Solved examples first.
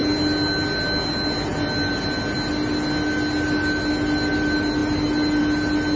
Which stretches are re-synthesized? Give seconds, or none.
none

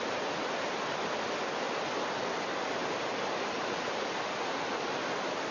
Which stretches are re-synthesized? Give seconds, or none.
none

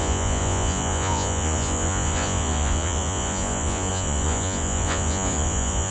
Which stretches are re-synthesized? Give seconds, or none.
0.0-5.9 (vocoder, Vocos)

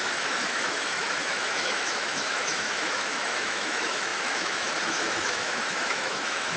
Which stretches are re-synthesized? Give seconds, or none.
0.0-6.6 (autoencoder, DAC-VAE)

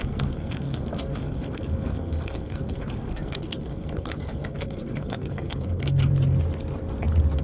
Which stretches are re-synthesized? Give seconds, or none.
0.0-6.1 (codec, SNAC)